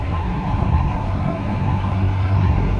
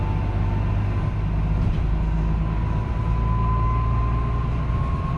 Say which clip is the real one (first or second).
second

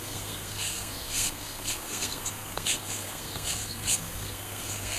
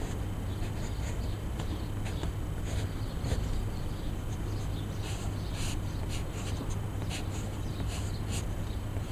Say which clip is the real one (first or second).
second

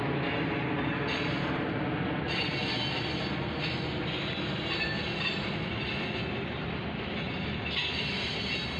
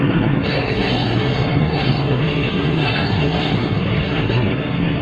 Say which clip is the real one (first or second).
first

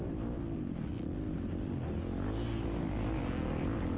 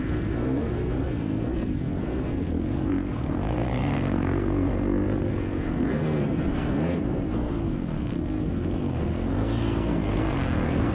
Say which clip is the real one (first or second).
first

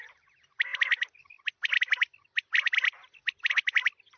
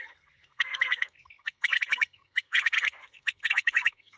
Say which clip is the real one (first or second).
first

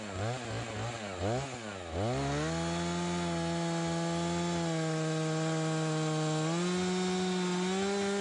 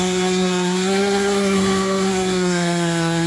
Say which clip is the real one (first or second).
first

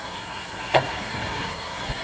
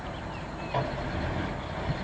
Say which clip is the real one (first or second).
second